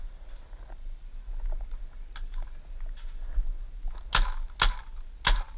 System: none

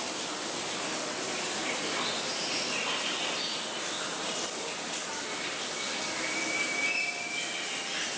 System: none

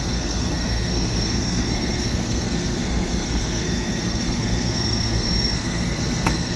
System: codec, SNAC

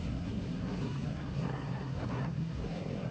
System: codec, SNAC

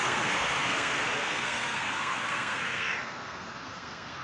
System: codec, SNAC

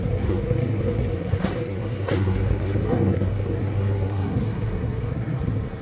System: codec, SNAC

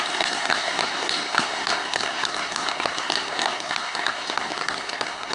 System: codec, SNAC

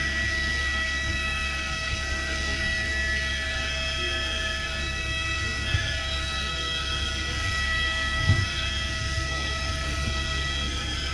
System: codec, SNAC